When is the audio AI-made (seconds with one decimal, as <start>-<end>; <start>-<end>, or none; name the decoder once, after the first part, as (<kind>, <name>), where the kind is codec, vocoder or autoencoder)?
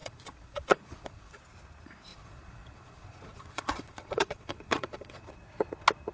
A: 0.0-1.4 (vocoder, Vocos); 2.1-5.3